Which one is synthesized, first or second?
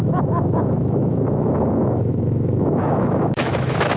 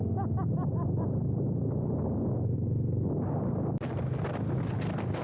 first